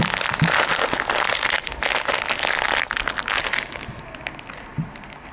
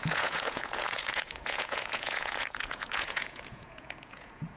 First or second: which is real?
first